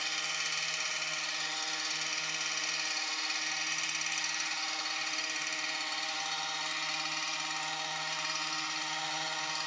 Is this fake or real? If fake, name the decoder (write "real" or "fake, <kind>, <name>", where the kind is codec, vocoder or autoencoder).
real